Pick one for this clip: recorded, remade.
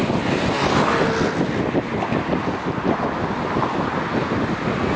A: recorded